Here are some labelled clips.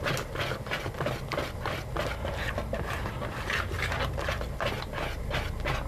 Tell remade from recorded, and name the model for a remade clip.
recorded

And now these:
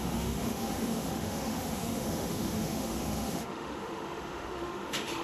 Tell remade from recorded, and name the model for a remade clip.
remade, autoencoder, DAC-VAE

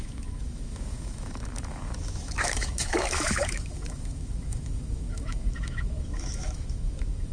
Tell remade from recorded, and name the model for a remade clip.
remade, autoencoder, DAC-VAE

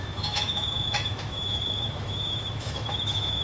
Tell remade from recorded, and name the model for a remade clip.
remade, autoencoder, DAC-VAE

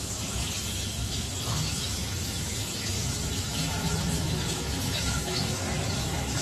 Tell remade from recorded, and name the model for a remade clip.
remade, autoencoder, DAC-VAE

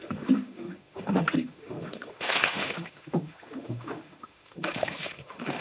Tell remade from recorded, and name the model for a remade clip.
remade, autoencoder, DAC-VAE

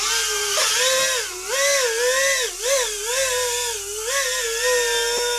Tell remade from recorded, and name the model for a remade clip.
recorded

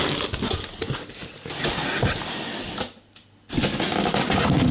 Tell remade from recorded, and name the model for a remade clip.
recorded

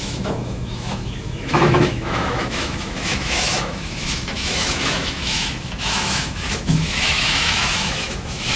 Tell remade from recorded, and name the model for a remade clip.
remade, autoencoder, DAC-VAE